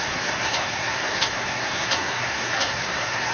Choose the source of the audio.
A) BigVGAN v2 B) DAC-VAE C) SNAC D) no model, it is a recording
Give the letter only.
C